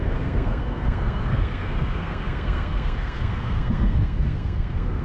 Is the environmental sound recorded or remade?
remade